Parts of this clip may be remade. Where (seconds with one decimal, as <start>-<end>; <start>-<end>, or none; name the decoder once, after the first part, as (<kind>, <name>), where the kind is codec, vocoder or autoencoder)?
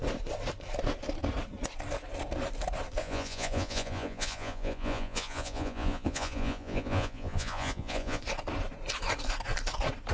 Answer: 3.0-8.2 (vocoder, Vocos)